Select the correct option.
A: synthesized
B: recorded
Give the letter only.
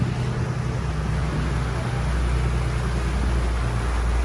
B